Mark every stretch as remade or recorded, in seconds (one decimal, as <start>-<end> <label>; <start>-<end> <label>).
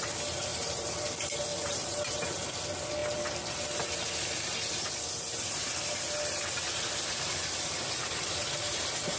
0.0-0.5 recorded; 0.5-1.1 remade; 1.1-1.5 recorded; 1.5-2.2 remade; 2.2-9.2 recorded